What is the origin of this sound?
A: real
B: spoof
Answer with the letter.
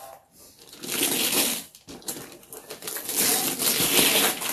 A